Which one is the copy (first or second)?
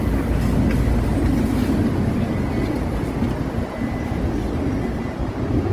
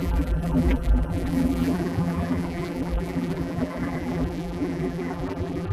second